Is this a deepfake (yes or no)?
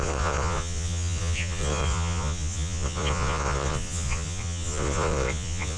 yes